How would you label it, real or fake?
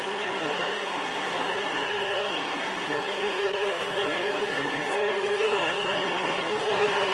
fake